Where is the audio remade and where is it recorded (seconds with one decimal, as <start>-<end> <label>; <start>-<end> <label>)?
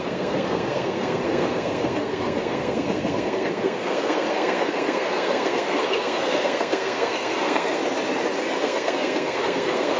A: 0.0-7.8 remade; 7.8-8.6 recorded; 8.6-10.0 remade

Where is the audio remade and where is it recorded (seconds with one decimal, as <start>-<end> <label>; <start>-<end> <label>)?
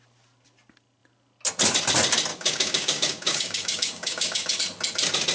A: 0.0-2.3 recorded; 2.3-4.6 remade; 4.6-5.3 recorded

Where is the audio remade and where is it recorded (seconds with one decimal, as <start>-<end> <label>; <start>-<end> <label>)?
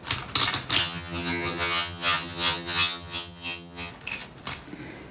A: 0.0-0.8 recorded; 0.8-3.9 remade; 3.9-5.1 recorded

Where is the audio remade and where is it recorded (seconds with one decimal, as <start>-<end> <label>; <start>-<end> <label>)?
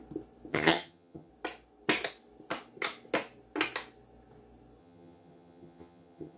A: 0.0-0.5 recorded; 0.5-1.3 remade; 1.3-4.8 recorded; 4.8-6.4 remade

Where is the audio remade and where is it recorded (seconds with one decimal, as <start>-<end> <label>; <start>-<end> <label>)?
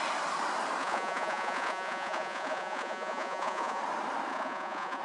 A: 0.0-0.8 recorded; 0.8-3.8 remade; 3.8-4.3 recorded; 4.3-5.0 remade